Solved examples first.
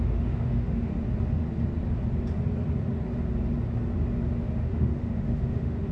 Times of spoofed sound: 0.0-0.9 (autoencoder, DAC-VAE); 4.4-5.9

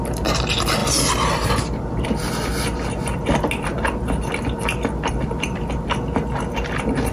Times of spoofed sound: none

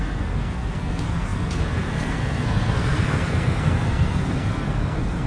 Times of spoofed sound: 0.0-5.3 (codec, SNAC)